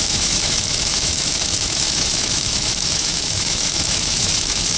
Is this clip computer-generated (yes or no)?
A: yes